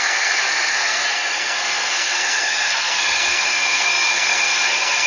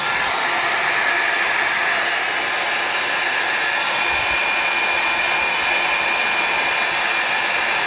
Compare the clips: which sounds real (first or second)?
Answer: second